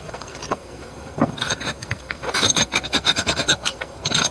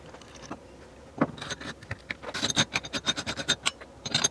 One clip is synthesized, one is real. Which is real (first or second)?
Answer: second